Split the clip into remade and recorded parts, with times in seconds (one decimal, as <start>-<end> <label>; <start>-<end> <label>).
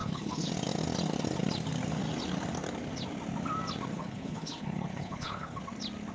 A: 0.0-0.5 remade; 0.5-3.9 recorded; 3.9-5.6 remade; 5.6-6.1 recorded